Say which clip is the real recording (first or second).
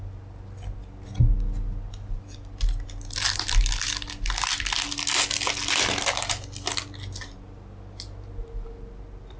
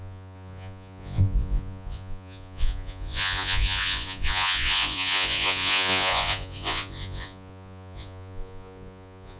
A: first